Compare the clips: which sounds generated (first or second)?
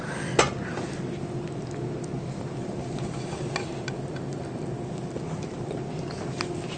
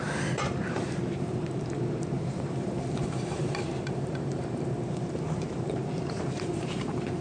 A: second